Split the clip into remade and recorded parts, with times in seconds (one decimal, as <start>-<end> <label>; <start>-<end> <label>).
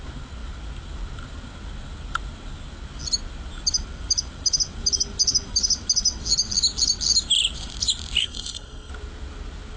0.0-8.2 recorded; 8.2-8.9 remade; 8.9-9.8 recorded